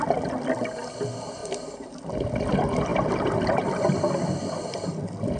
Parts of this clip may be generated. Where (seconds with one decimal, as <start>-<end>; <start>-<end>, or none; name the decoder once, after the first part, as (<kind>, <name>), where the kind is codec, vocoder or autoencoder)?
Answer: 1.4-1.9 (vocoder, BigVGAN v2); 2.9-3.8